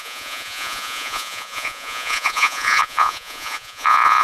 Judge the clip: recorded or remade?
remade